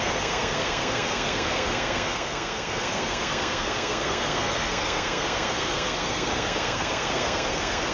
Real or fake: fake